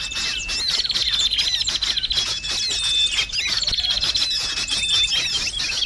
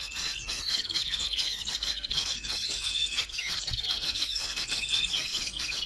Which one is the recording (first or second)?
first